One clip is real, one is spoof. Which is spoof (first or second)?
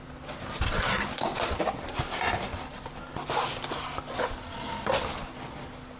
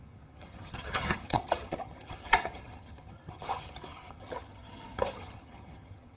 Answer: second